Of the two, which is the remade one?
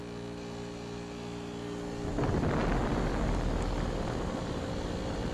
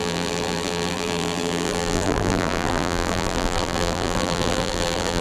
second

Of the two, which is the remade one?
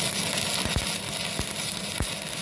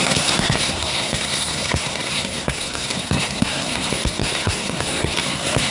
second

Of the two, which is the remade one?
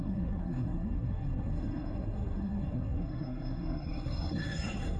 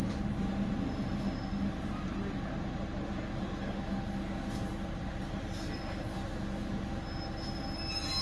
first